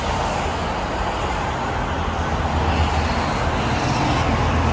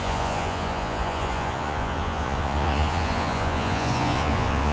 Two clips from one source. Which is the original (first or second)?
first